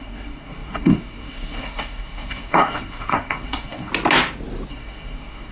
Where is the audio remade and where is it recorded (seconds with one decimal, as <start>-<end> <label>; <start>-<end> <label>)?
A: 0.0-3.9 remade; 3.9-4.7 recorded; 4.7-5.5 remade